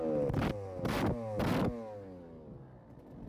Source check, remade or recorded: recorded